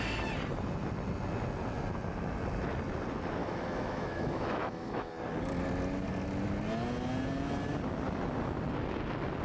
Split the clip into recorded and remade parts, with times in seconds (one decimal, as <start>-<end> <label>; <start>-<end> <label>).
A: 0.0-3.4 recorded; 3.4-5.1 remade; 5.1-9.4 recorded